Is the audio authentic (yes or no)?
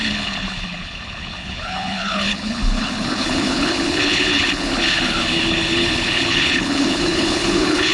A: no